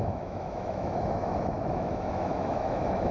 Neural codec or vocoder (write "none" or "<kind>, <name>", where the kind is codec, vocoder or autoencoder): autoencoder, DAC-VAE